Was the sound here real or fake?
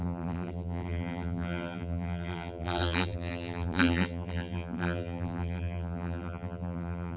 fake